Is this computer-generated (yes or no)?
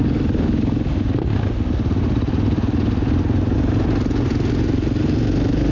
no